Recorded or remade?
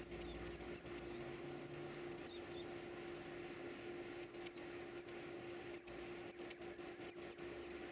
recorded